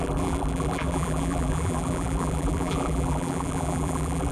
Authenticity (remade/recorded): remade